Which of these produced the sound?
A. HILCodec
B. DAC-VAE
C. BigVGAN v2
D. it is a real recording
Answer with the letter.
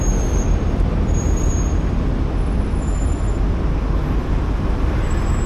C